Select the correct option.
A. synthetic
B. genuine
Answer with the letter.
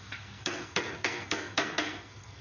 A